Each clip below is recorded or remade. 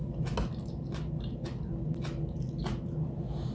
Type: recorded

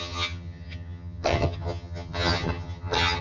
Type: remade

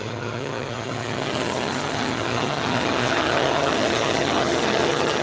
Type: remade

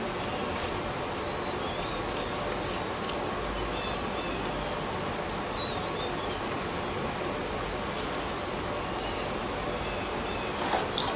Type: recorded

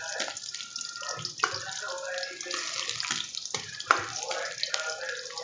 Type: recorded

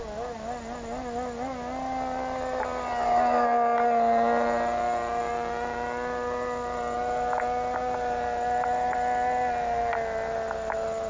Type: recorded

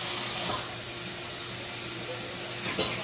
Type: recorded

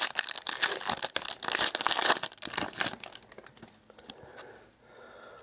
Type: recorded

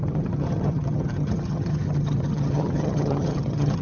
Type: remade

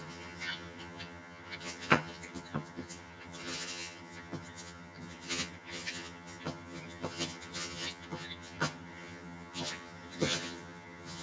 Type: remade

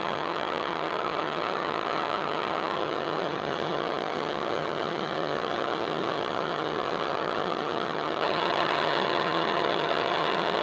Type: remade